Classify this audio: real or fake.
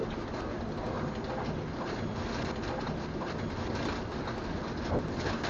real